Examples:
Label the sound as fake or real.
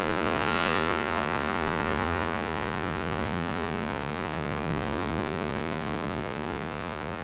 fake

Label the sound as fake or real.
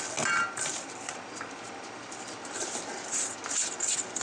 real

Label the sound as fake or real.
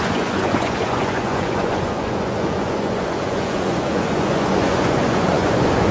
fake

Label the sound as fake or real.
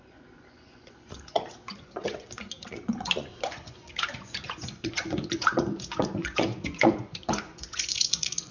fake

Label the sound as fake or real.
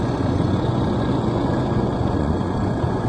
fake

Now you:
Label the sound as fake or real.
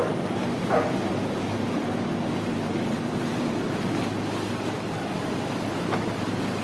real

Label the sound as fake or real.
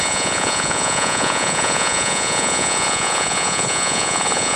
fake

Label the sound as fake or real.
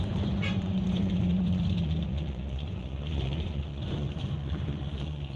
fake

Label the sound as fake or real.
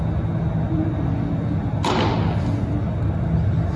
real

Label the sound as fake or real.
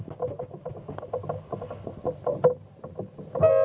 real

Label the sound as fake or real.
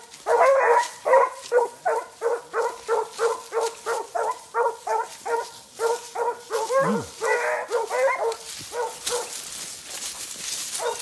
real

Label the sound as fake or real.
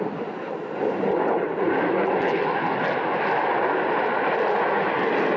real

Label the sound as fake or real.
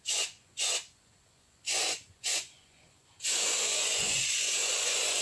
fake